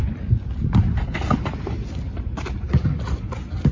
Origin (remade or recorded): recorded